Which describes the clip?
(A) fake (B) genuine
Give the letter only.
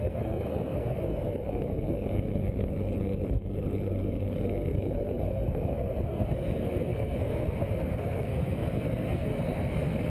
A